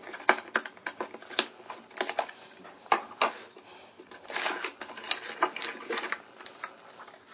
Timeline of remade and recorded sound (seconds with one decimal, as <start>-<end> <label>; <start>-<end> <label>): 0.0-7.3 recorded